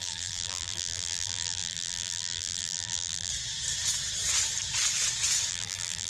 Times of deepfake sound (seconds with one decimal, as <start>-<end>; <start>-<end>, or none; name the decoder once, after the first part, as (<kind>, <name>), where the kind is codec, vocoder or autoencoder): 0.0-3.3 (vocoder, BigVGAN v2); 5.5-6.1